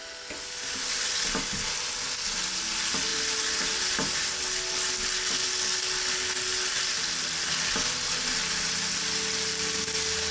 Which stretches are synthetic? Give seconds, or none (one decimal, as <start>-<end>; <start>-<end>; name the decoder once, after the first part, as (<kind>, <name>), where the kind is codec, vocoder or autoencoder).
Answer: none